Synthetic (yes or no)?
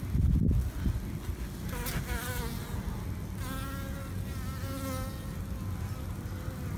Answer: no